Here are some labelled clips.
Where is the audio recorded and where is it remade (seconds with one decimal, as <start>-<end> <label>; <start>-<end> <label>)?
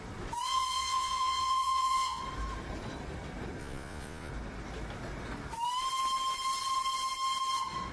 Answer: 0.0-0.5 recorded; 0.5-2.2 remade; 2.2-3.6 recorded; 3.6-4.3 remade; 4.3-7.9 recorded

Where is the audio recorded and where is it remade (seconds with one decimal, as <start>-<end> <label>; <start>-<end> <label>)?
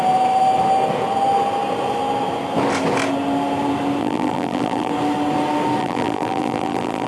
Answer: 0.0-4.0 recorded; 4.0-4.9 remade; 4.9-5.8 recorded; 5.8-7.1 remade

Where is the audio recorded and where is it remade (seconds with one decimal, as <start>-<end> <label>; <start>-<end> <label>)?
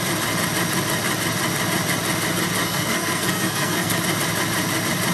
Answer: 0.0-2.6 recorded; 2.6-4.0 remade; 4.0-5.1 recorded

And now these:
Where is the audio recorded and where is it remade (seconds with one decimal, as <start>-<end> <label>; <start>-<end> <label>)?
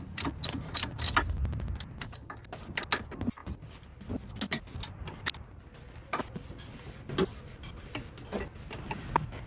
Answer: 0.0-9.5 recorded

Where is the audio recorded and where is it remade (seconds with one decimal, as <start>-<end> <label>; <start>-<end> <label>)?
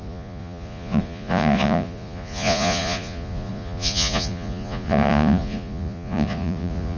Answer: 0.0-7.0 remade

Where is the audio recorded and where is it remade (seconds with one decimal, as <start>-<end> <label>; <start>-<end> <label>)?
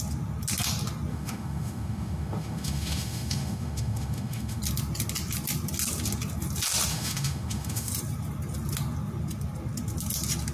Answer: 0.0-1.1 recorded; 1.1-4.6 remade; 4.6-6.9 recorded; 6.9-7.9 remade; 7.9-10.5 recorded